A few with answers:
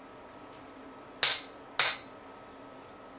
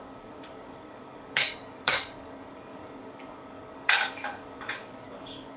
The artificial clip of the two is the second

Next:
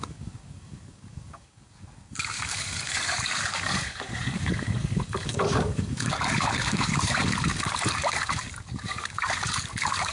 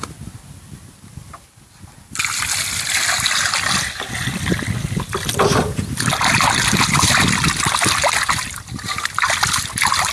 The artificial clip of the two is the first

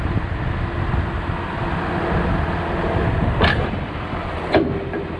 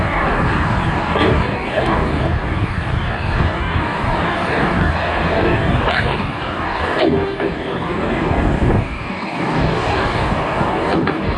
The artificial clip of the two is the second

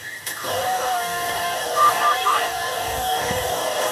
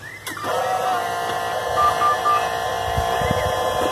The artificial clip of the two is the first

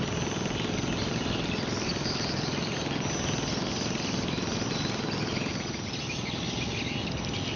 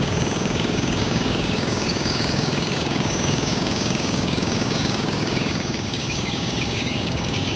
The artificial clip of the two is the second